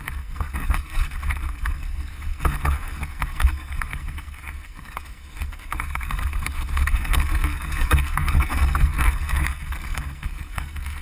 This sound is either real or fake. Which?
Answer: fake